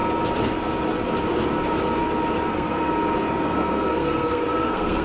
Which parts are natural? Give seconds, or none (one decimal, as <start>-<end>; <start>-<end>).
0.0-2.5; 2.9-3.4